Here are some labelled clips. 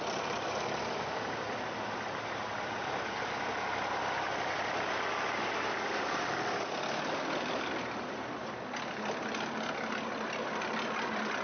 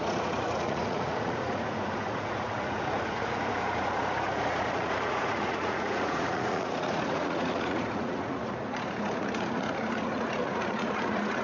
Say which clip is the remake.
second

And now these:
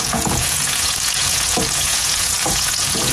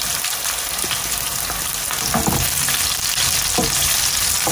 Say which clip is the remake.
first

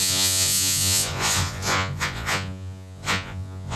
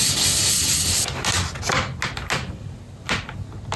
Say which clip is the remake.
first